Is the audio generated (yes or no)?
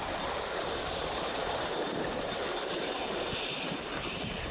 yes